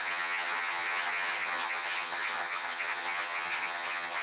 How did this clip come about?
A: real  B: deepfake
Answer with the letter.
B